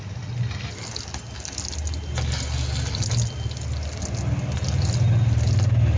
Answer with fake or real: real